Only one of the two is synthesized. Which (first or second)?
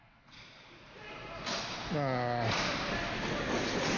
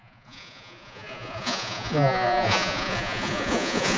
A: second